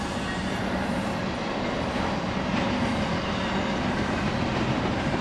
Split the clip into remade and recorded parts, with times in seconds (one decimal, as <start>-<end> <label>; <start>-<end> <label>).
0.0-5.2 recorded